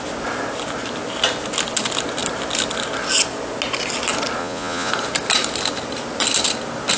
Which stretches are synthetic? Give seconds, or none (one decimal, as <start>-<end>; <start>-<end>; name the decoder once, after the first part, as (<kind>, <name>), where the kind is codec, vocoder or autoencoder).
4.4-4.9 (vocoder, Vocos)